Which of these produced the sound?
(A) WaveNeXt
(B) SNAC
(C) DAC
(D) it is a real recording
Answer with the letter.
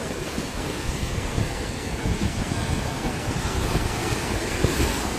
B